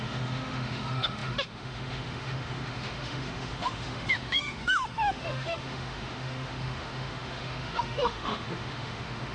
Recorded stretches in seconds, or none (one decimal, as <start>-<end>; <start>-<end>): none

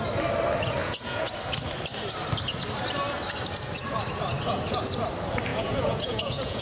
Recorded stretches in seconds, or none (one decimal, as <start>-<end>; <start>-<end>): 0.0-0.8; 1.3-5.5